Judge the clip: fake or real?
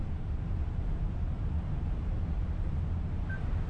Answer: fake